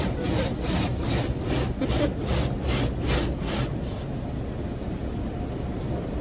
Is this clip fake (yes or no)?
no